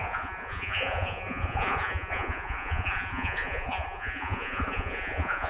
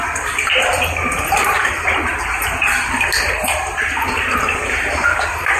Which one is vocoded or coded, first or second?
first